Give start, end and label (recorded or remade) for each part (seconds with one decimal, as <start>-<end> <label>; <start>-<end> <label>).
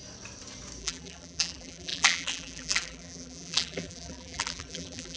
0.0-0.8 recorded; 0.8-5.2 remade